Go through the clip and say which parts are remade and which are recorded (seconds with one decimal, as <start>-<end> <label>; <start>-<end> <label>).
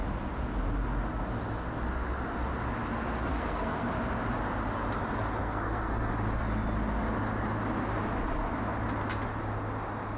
0.0-3.3 recorded; 3.3-3.9 remade; 3.9-5.4 recorded; 5.4-6.1 remade; 6.1-10.2 recorded